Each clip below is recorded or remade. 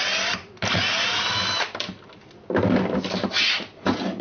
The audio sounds recorded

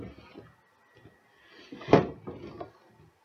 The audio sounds recorded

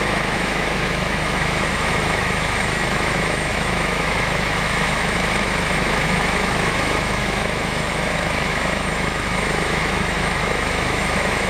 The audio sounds remade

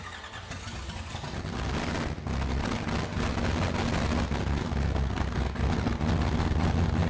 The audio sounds recorded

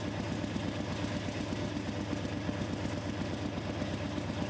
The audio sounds remade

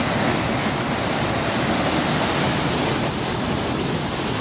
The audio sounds recorded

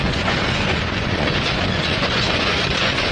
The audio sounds remade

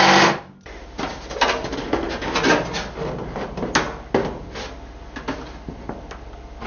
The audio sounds recorded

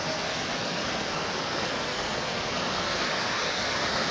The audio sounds remade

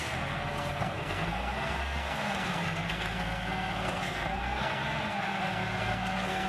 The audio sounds remade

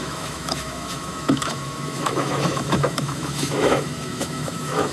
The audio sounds remade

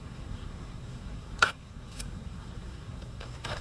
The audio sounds remade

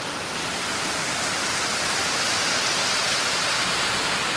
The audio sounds recorded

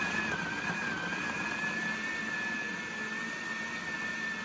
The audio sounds recorded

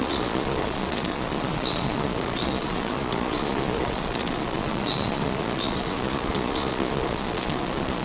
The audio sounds remade